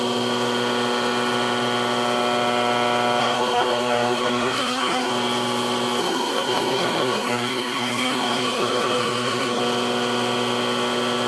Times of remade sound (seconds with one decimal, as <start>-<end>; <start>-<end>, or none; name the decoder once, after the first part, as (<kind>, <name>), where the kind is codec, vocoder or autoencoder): 3.2-5.1 (codec, SNAC); 6.0-9.6